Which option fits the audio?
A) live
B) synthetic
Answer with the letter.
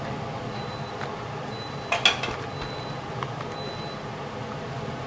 A